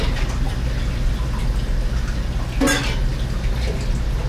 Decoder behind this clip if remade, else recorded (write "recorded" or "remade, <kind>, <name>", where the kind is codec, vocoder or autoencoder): recorded